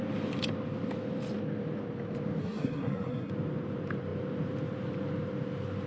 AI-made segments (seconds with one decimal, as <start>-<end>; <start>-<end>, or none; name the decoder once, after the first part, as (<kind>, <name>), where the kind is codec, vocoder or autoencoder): 2.4-3.3 (codec, SNAC)